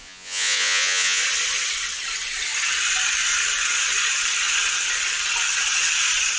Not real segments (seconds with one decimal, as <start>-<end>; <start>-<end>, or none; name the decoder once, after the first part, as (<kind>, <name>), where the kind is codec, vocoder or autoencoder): 0.0-1.2 (vocoder, Vocos)